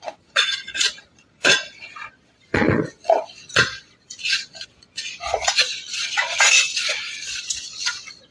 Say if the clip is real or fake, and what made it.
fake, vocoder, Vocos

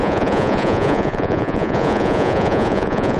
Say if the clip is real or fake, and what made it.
fake, vocoder, Vocos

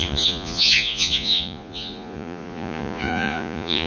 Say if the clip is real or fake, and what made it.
fake, vocoder, Vocos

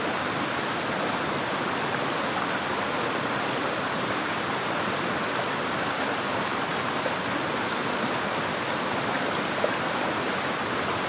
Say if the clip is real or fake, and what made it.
real